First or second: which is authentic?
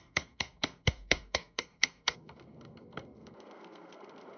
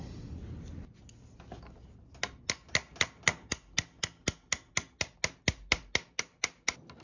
second